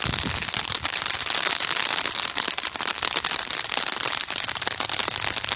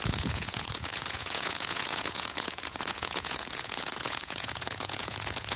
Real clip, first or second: first